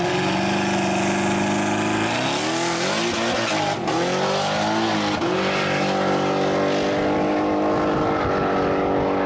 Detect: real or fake real